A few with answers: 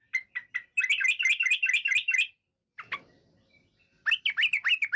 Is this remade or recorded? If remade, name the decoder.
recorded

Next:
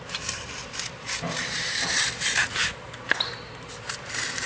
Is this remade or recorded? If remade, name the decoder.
remade, vocoder, BigVGAN v2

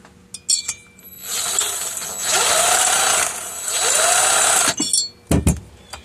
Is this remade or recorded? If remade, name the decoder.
recorded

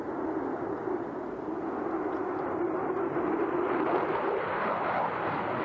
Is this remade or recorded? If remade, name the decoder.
recorded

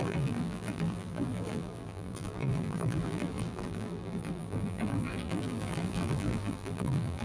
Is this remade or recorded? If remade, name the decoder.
remade, vocoder, BigVGAN v2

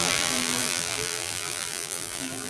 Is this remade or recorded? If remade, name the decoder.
remade, vocoder, BigVGAN v2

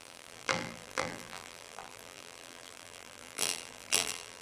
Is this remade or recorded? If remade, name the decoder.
remade, vocoder, BigVGAN v2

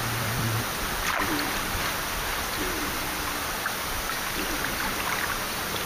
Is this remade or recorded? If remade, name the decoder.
recorded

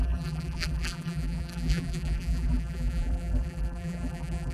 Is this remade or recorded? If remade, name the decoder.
remade, vocoder, BigVGAN v2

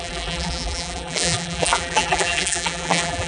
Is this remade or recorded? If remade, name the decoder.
remade, vocoder, BigVGAN v2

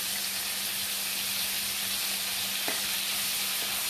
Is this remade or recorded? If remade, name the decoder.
recorded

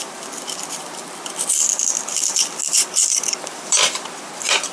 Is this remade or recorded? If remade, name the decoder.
remade, vocoder, BigVGAN v2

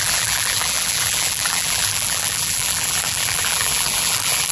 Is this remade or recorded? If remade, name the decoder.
remade, vocoder, BigVGAN v2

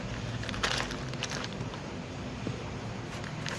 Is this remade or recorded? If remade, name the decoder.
remade, vocoder, BigVGAN v2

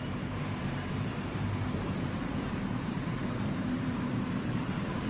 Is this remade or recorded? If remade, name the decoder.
remade, vocoder, BigVGAN v2